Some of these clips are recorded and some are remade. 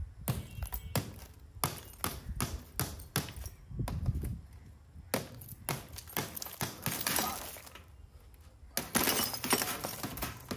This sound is recorded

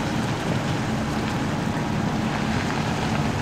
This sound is recorded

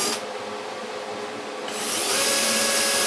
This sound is recorded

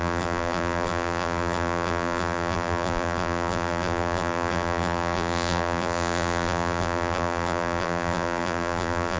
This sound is remade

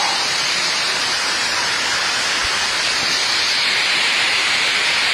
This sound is remade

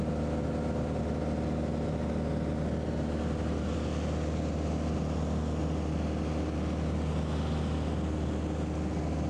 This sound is recorded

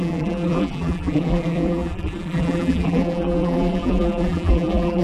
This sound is remade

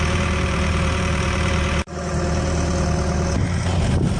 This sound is remade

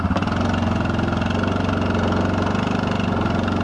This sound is recorded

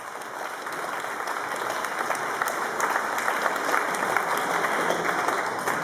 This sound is recorded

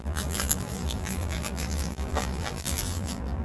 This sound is remade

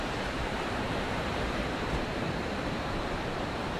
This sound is remade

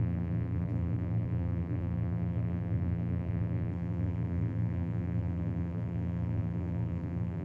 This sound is remade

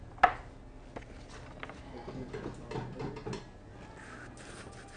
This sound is recorded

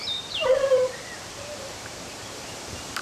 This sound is remade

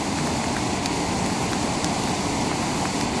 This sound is recorded